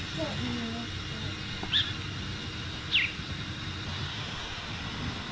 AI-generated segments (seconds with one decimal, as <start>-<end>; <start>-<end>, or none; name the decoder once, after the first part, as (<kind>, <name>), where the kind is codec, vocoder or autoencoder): 4.1-4.8 (autoencoder, DAC-VAE)